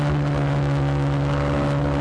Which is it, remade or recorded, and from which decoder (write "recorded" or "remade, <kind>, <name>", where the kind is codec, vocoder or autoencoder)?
recorded